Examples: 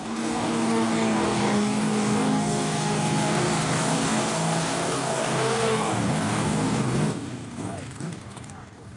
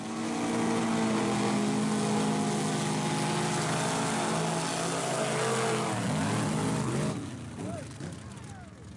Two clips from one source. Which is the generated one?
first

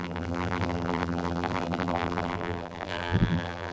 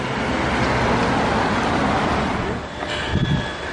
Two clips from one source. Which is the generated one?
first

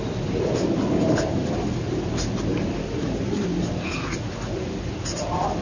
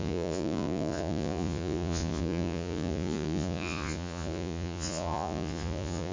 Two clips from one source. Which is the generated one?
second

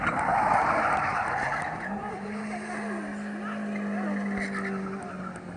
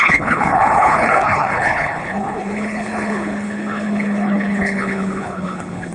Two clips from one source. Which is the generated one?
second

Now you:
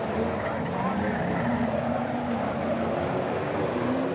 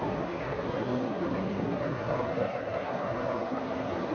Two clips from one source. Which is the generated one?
second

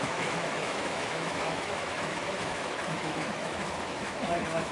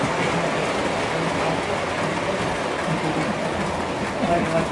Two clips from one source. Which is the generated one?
first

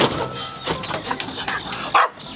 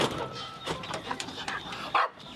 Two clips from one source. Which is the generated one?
second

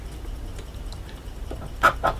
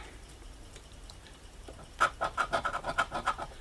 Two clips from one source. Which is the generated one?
second